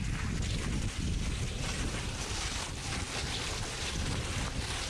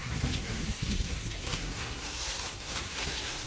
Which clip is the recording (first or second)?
first